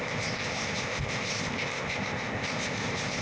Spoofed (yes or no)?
yes